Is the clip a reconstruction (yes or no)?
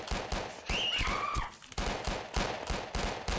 no